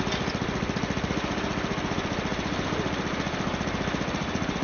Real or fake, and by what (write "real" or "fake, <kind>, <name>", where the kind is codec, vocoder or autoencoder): real